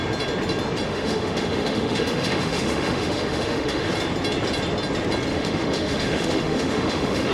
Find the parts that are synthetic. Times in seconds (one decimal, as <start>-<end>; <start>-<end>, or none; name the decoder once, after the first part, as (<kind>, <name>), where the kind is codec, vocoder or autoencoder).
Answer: 0.9-3.9 (autoencoder, DAC-VAE); 5.3-7.3